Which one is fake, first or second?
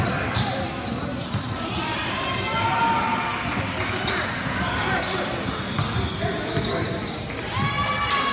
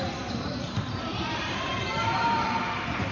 second